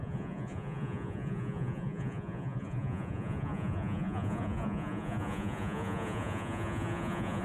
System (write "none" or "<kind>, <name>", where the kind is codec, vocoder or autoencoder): vocoder, Vocos